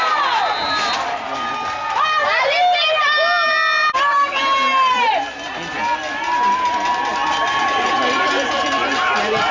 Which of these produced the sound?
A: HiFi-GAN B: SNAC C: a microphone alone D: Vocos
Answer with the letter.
C